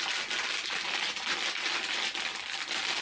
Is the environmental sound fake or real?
real